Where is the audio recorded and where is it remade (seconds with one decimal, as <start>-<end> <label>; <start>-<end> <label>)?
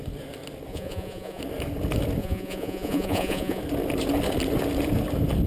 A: 0.0-0.7 recorded; 0.7-1.4 remade; 1.4-2.2 recorded; 2.2-3.6 remade; 3.6-5.5 recorded